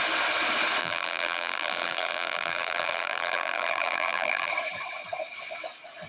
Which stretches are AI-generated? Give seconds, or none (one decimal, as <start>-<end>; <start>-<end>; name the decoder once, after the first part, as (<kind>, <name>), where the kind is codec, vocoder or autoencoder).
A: 0.8-4.5 (vocoder, BigVGAN v2)